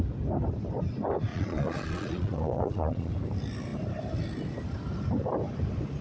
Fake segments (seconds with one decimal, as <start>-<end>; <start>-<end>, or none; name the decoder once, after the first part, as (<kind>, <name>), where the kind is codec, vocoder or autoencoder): 1.3-3.1 (vocoder, Vocos)